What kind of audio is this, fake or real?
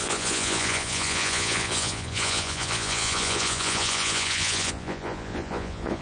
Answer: fake